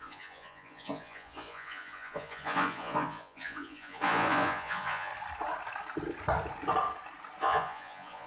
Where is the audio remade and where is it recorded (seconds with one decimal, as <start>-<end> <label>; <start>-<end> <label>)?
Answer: 0.0-5.1 remade; 5.1-7.4 recorded; 7.4-8.3 remade

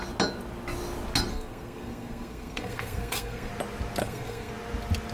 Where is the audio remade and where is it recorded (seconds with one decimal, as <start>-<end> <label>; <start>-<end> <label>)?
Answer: 0.0-1.3 recorded; 1.3-3.5 remade; 3.5-4.0 recorded; 4.0-4.5 remade; 4.5-5.1 recorded